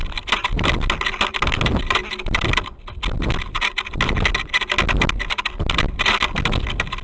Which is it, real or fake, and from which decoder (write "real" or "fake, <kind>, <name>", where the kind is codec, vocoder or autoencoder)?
real